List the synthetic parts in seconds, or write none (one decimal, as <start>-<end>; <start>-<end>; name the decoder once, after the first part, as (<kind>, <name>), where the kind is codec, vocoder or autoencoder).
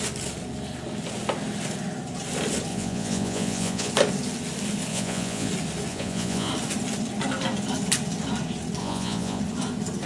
2.7-3.9 (vocoder, Vocos); 4.9-5.5; 5.9-6.5; 8.8-9.4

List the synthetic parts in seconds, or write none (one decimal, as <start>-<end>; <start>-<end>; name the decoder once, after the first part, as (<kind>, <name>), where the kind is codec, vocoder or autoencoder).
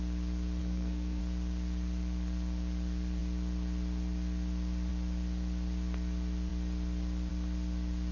0.6-1.2 (codec, SNAC)